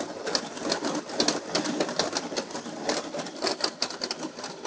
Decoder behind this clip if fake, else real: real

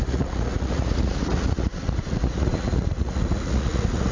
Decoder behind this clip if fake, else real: fake, vocoder, Vocos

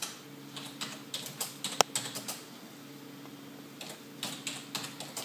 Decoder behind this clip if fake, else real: real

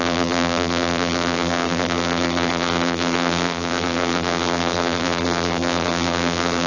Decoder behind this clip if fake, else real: fake, vocoder, BigVGAN v2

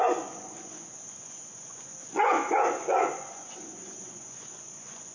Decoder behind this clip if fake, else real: fake, vocoder, Vocos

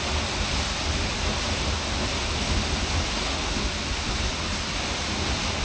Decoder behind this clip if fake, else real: real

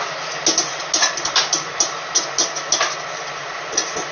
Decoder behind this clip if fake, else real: real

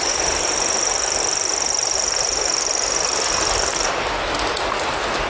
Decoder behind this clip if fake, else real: real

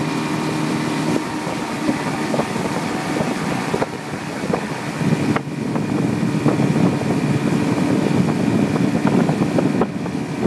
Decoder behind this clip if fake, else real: real